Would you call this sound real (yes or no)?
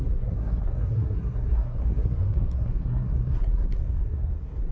no